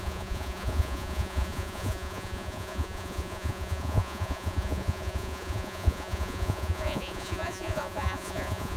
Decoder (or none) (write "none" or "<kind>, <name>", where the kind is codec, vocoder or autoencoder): vocoder, Vocos